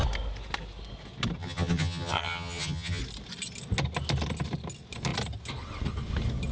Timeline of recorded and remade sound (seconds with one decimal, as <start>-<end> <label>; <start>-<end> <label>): 0.0-1.4 recorded; 1.4-3.0 remade; 3.0-6.5 recorded